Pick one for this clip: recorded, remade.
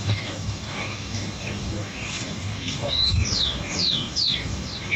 remade